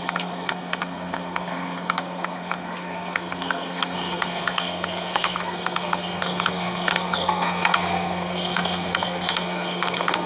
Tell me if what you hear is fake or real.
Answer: fake